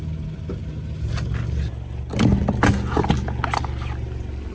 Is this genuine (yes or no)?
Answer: yes